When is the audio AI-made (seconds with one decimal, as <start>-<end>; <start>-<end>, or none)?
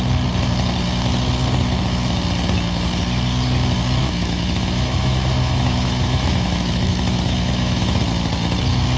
4.0-8.0